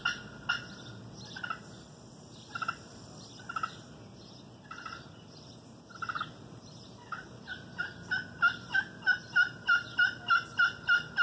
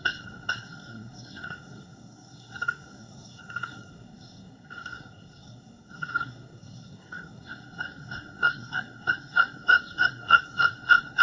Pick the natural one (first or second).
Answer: first